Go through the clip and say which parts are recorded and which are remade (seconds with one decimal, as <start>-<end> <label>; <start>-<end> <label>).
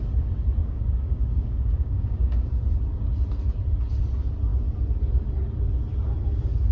0.0-0.6 recorded; 0.6-2.5 remade; 2.5-6.7 recorded